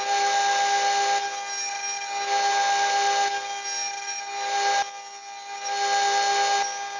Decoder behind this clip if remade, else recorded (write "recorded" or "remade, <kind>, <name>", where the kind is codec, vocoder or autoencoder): recorded